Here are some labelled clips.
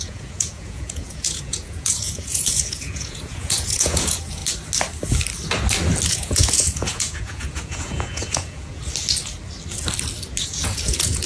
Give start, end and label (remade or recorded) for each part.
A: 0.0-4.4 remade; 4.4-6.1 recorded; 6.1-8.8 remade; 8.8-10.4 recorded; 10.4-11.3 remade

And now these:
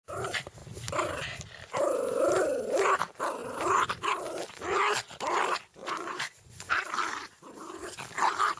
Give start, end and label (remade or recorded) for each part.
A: 0.0-5.8 recorded; 5.8-6.7 remade; 6.7-8.6 recorded

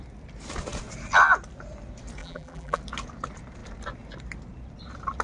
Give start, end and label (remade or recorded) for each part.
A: 0.0-2.2 recorded; 2.2-2.8 remade; 2.8-5.2 recorded

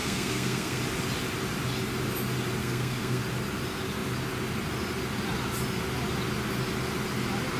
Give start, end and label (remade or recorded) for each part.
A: 0.0-0.8 remade; 0.8-2.6 recorded; 2.6-3.2 remade; 3.2-7.6 recorded

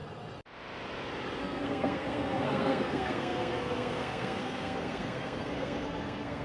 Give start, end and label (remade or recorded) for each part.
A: 0.0-1.4 recorded; 1.4-6.4 remade

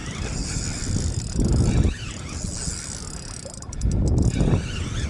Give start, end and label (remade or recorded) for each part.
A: 0.0-1.5 remade; 1.5-5.1 recorded

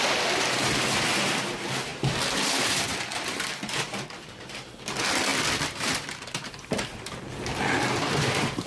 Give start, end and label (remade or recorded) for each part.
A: 0.0-1.9 remade; 1.9-2.6 recorded; 2.6-8.7 remade